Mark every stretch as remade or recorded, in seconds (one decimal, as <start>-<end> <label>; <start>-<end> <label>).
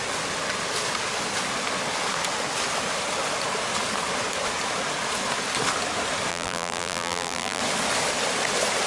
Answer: 0.0-6.3 recorded; 6.3-7.6 remade; 7.6-8.9 recorded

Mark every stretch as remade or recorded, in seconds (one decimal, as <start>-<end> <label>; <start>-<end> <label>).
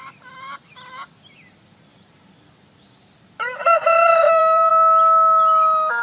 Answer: 0.0-1.9 recorded; 1.9-4.7 remade; 4.7-6.0 recorded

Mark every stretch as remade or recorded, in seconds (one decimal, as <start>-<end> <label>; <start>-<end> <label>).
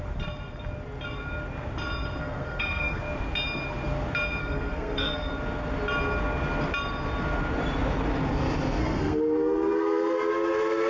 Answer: 0.0-2.2 recorded; 2.2-3.0 remade; 3.0-4.4 recorded; 4.4-5.3 remade; 5.3-8.8 recorded; 8.8-10.3 remade; 10.3-10.9 recorded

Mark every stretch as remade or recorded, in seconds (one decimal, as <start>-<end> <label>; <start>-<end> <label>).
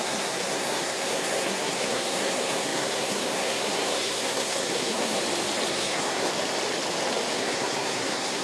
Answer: 0.0-5.2 remade; 5.2-5.7 recorded; 5.7-6.3 remade; 6.3-7.3 recorded; 7.3-8.4 remade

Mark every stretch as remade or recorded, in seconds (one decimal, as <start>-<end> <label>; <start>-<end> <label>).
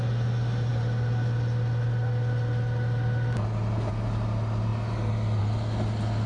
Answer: 0.0-6.3 recorded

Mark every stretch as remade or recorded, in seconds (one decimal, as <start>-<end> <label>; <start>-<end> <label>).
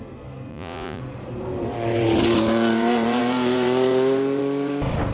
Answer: 0.0-0.5 recorded; 0.5-1.0 remade; 1.0-5.1 recorded